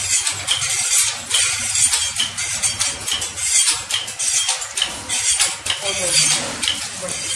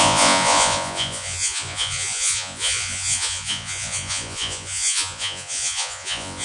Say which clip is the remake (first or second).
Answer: second